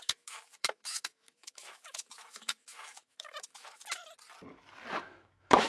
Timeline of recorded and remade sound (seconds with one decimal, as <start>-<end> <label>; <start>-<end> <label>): 0.0-4.0 remade; 4.0-5.0 recorded; 5.0-5.7 remade